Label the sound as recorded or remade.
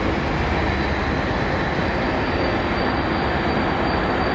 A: recorded